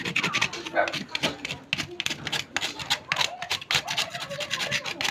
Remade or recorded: recorded